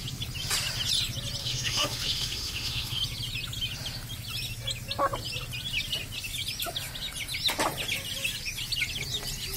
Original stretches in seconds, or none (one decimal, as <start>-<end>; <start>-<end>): 0.0-1.4; 3.0-9.6